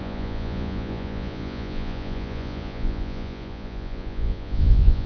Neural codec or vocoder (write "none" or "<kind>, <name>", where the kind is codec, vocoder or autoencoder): vocoder, Vocos